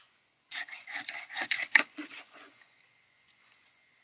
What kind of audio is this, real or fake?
fake